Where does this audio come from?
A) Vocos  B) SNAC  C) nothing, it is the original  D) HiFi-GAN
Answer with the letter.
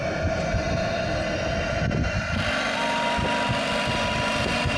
C